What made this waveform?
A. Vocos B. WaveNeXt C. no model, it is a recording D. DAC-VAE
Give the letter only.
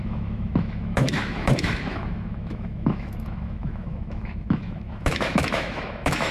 D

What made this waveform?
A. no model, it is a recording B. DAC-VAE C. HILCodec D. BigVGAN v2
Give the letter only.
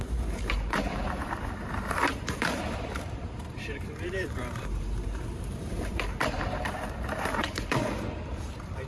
D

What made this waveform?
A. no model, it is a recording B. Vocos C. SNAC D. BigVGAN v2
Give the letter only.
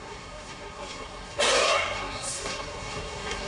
C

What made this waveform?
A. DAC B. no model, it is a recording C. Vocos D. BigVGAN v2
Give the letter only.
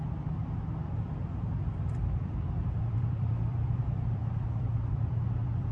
D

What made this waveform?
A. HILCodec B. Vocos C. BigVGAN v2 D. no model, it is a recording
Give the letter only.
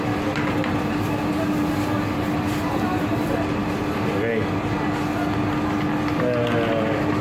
D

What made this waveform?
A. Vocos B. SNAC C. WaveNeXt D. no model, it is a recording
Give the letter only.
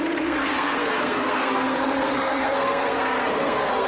B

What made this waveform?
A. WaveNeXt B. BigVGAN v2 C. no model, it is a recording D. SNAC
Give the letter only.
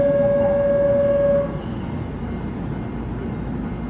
C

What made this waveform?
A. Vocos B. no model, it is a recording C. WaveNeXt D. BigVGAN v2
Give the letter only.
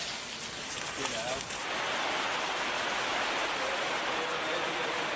B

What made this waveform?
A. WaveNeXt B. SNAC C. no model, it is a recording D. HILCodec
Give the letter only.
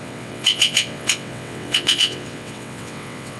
A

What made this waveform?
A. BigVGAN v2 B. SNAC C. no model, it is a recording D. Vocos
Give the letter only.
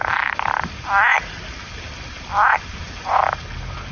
C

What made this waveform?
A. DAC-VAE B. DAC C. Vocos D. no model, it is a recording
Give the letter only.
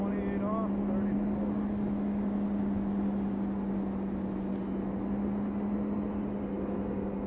D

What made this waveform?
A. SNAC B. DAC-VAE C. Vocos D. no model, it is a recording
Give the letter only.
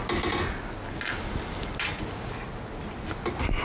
D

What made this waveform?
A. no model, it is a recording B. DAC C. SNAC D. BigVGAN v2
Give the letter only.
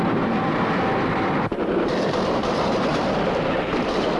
D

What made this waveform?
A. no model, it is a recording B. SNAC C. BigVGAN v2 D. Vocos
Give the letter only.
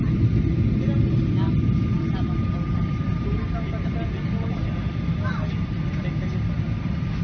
A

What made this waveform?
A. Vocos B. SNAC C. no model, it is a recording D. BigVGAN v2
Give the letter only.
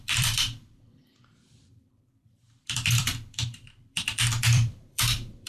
D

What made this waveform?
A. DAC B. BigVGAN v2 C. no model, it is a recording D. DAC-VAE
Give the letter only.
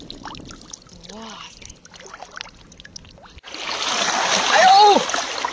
C